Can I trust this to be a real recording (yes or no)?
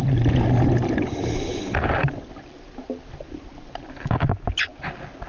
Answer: yes